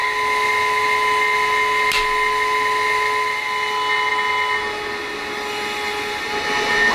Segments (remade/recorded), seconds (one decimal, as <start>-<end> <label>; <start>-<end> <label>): 0.0-6.9 recorded